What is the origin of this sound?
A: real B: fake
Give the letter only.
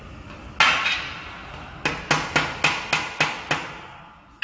A